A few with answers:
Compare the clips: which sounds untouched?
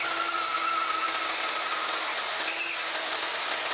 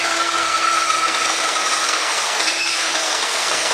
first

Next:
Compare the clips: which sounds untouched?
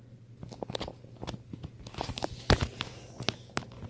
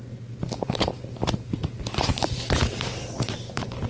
first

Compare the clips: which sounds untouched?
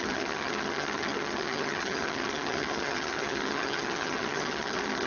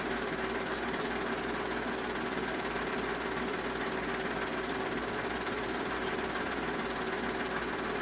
second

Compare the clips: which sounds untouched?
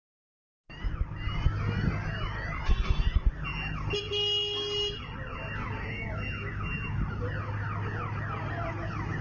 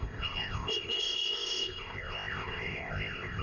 first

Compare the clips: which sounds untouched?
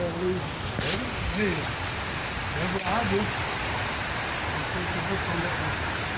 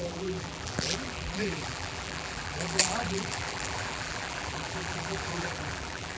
first